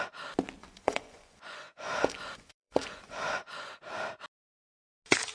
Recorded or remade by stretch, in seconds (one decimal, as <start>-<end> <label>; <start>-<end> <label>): 0.0-0.6 recorded; 0.6-3.8 remade; 3.8-5.3 recorded